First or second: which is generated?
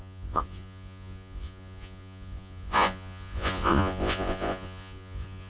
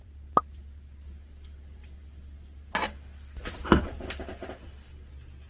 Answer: first